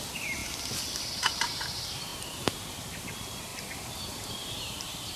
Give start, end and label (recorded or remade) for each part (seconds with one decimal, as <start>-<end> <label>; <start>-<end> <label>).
0.0-0.4 remade; 0.4-0.9 recorded; 0.9-5.2 remade